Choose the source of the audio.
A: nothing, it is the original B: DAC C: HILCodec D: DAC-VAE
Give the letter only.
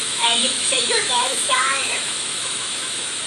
D